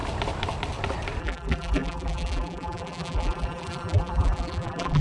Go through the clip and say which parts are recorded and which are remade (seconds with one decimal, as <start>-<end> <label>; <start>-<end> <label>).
0.0-1.2 recorded; 1.2-5.0 remade